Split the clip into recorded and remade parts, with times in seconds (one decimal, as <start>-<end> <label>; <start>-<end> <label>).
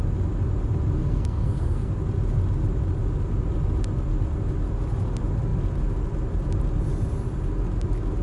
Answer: 0.0-1.0 recorded; 1.0-1.9 remade; 1.9-8.2 recorded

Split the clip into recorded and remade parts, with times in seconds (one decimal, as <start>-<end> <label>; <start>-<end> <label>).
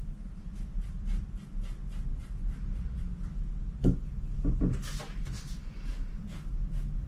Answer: 0.0-7.1 recorded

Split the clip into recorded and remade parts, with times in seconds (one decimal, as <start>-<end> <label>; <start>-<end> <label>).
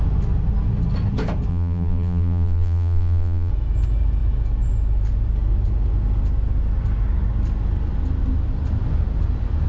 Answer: 0.0-1.5 recorded; 1.5-3.5 remade; 3.5-9.7 recorded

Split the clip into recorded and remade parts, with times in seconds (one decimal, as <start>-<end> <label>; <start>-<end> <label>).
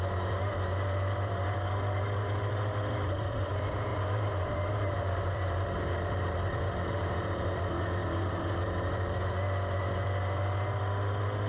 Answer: 0.0-3.9 recorded; 3.9-7.6 remade; 7.6-11.5 recorded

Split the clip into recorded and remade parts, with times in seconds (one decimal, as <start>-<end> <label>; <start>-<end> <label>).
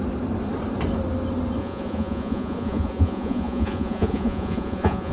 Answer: 0.0-1.6 recorded; 1.6-5.1 remade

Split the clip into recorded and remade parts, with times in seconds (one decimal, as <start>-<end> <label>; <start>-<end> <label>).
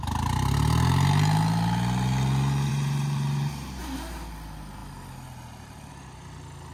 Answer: 0.0-2.7 recorded; 2.7-3.8 remade; 3.8-6.7 recorded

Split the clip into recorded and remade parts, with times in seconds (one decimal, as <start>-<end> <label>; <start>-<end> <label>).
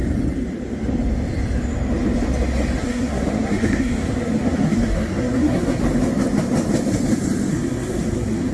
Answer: 0.0-2.8 recorded; 2.8-5.8 remade; 5.8-7.5 recorded; 7.5-8.5 remade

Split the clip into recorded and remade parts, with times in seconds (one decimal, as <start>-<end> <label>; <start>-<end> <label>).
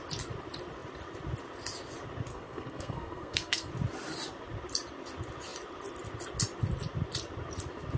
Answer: 0.0-2.3 recorded; 2.3-3.7 remade; 3.7-8.0 recorded